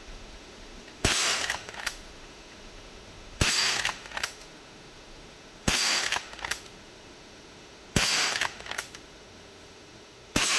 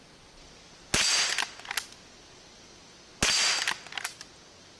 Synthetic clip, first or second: first